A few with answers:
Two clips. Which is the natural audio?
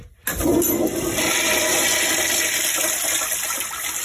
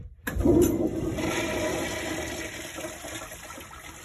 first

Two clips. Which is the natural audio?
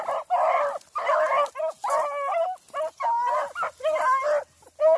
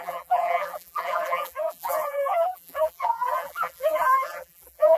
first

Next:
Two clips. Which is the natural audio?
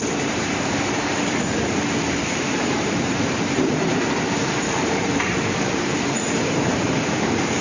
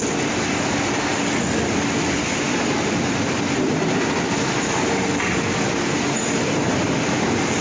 second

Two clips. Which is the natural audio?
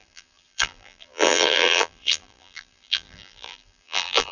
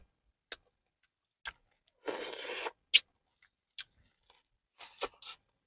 second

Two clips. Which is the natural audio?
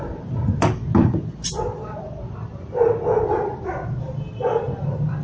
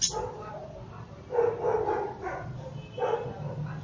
second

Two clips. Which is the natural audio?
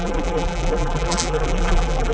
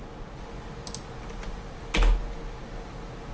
second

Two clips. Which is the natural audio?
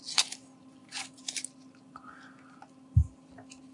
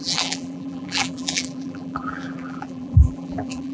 first